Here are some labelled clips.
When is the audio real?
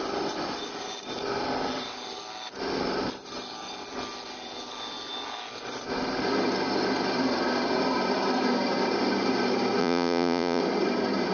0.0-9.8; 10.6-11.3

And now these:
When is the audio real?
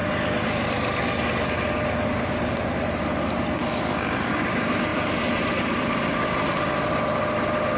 0.0-1.2; 4.9-5.7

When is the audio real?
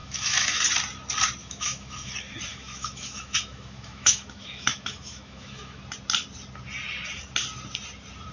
0.6-1.4; 2.1-2.5; 5.8-8.3